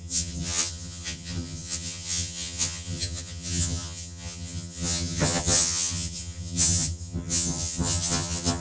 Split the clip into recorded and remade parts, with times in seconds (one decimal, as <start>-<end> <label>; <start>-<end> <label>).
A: 0.0-8.6 remade